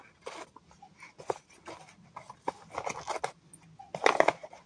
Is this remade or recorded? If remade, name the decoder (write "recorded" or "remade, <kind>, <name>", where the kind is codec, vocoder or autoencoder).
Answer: recorded